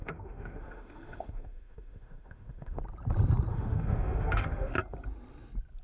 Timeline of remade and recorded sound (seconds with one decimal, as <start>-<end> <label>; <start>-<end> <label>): 0.0-2.8 remade; 2.8-3.5 recorded; 3.5-4.7 remade; 4.7-5.8 recorded